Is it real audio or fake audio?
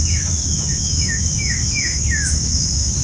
fake